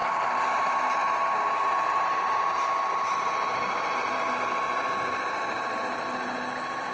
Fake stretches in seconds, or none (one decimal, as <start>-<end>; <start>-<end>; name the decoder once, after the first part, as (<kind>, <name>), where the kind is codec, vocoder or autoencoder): none